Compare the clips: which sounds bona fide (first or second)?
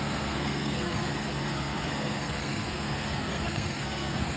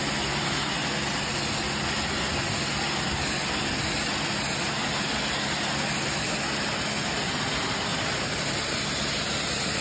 second